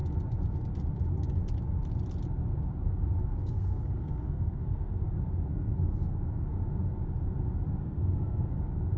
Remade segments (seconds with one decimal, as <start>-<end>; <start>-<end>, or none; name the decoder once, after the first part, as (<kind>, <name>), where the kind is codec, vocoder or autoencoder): 3.3-5.0 (codec, SNAC); 5.5-6.5; 7.8-8.5